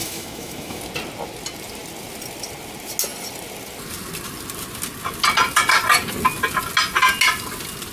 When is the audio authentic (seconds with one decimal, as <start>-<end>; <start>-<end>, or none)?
0.8-7.9